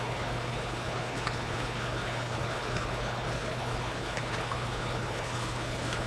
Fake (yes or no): yes